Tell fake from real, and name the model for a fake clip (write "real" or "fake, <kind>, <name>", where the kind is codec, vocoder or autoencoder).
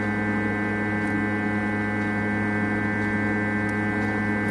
real